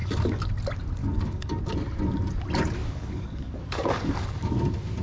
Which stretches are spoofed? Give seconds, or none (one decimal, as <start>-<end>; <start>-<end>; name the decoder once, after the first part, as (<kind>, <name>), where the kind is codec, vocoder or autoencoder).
0.0-0.5 (codec, DAC); 1.0-1.6; 2.8-4.6